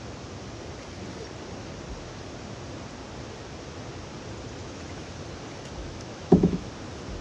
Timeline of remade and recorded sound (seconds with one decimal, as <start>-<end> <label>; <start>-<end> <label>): 0.0-4.6 recorded; 4.6-5.1 remade; 5.1-5.8 recorded; 5.8-6.7 remade; 6.7-7.2 recorded